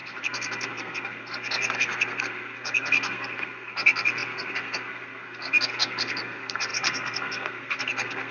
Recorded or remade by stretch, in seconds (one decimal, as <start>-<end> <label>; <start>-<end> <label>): 0.0-8.3 remade